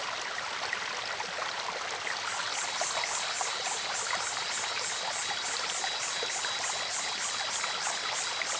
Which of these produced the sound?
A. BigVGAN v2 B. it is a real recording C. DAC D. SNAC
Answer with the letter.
B